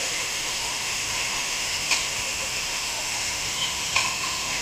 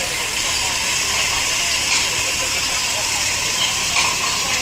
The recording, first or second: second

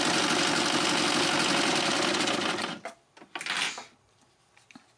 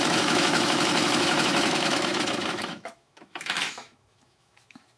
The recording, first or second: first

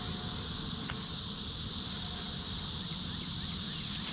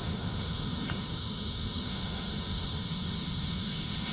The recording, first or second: first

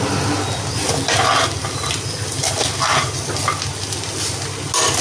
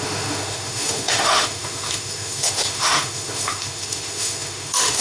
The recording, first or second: first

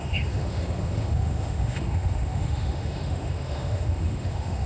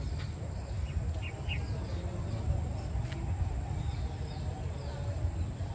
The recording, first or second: second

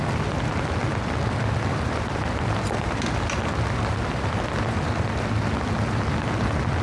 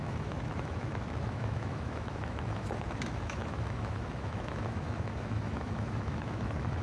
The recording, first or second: first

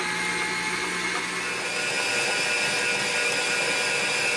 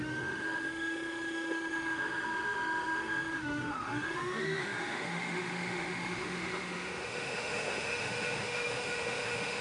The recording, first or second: first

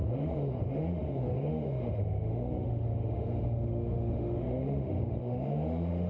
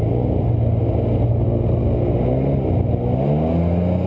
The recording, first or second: second